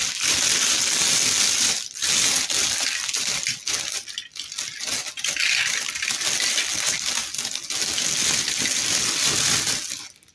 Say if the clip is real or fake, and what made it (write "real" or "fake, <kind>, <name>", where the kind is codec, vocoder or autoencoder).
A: real